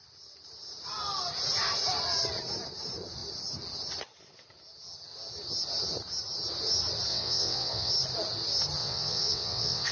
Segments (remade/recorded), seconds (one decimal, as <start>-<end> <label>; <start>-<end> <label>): 0.0-7.1 recorded; 7.1-7.9 remade; 7.9-8.8 recorded; 8.8-9.9 remade